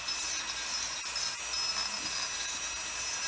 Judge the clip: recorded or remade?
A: recorded